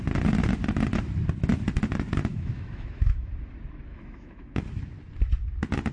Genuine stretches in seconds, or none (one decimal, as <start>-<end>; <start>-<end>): 0.0-2.3; 3.3-3.9; 4.6-5.9

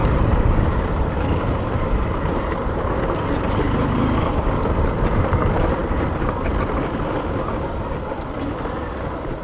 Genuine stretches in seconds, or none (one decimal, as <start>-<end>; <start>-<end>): 2.9-9.4

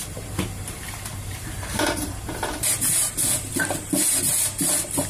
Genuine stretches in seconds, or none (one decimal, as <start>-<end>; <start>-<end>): 3.1-5.1

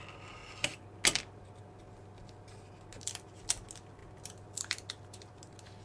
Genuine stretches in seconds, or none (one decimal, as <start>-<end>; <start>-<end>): 0.0-5.8

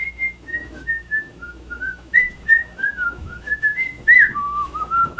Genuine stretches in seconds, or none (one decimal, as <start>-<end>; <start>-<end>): none

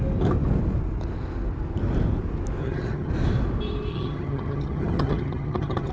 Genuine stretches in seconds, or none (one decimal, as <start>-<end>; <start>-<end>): 0.0-2.6; 3.1-3.9

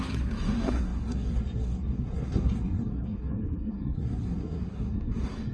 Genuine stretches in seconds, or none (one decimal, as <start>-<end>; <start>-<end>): none